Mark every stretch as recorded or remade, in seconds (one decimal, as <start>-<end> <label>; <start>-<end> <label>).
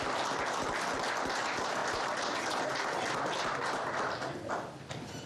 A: 0.0-5.3 recorded